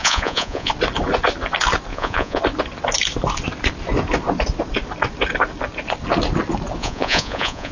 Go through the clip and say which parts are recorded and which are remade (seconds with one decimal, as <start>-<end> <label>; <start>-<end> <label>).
0.0-0.7 remade; 0.7-1.9 recorded; 1.9-2.4 remade; 2.4-6.8 recorded; 6.8-7.7 remade